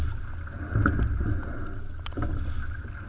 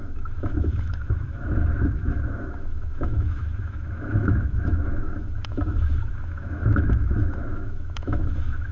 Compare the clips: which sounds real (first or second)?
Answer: first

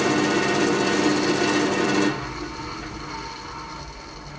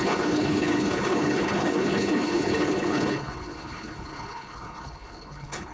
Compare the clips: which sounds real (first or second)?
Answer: first